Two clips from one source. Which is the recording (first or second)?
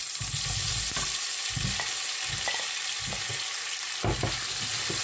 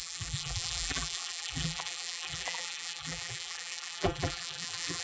first